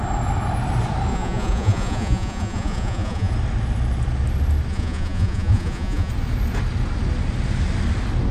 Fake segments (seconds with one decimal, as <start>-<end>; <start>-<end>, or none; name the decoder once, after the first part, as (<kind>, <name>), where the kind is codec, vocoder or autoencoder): 1.1-3.3 (vocoder, Vocos); 4.7-6.1